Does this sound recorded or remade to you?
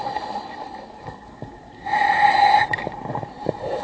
recorded